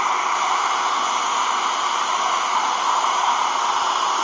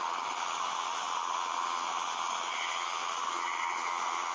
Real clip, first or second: first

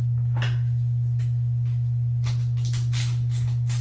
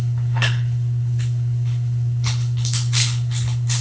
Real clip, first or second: first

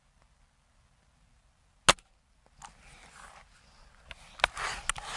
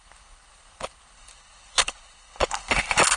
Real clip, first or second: first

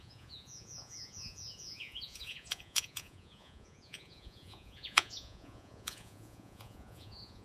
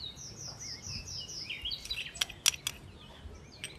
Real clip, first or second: second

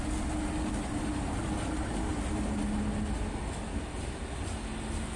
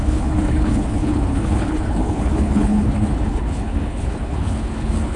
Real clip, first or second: first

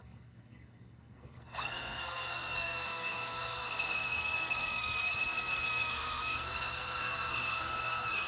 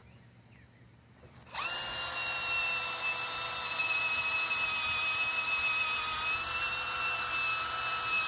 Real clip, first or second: second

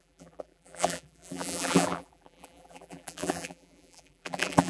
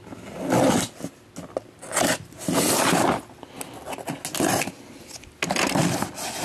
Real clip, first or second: second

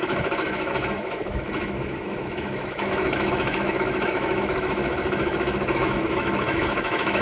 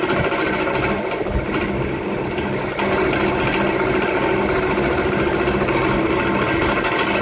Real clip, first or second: second